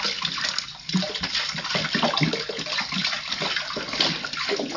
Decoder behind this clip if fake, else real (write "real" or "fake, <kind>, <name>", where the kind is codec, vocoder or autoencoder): real